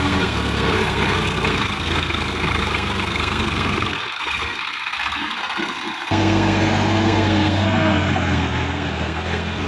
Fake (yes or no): yes